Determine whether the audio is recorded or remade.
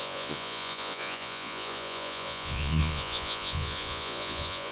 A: remade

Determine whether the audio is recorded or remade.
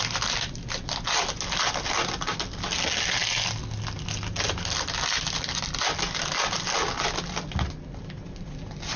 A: recorded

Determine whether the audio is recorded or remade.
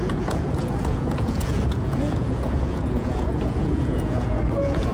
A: remade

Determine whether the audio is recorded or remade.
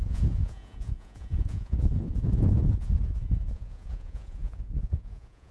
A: remade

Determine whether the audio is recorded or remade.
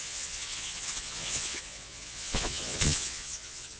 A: remade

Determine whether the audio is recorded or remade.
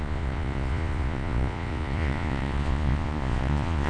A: remade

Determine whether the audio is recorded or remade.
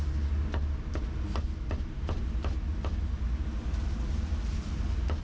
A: recorded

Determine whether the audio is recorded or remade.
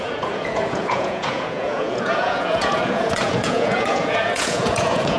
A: remade